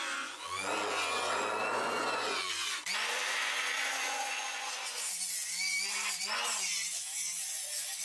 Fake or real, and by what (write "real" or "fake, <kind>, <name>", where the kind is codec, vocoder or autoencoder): fake, vocoder, Vocos